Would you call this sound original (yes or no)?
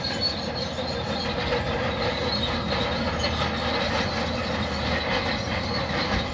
yes